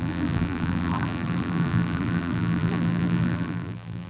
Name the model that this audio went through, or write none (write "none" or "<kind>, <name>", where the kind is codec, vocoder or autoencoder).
vocoder, BigVGAN v2